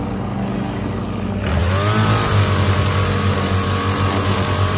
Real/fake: real